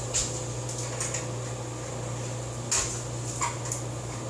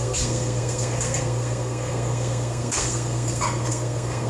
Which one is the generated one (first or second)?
second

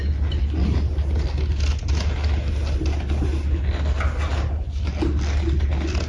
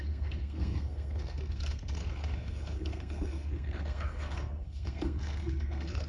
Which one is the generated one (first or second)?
second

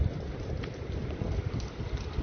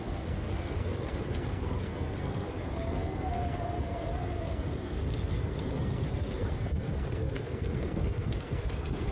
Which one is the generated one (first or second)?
second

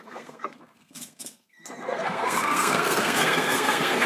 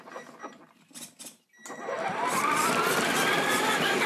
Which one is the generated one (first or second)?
first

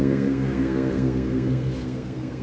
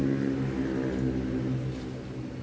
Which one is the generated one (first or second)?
first